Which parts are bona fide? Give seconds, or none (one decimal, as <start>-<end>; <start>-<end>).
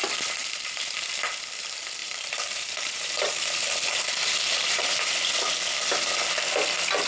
0.0-0.4; 1.1-2.0; 5.1-7.1